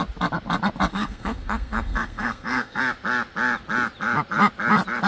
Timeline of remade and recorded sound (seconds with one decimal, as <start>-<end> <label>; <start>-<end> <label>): 0.0-0.9 recorded; 0.9-2.8 remade; 2.8-5.1 recorded